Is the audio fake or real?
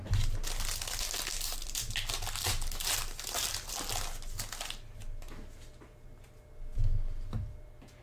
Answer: real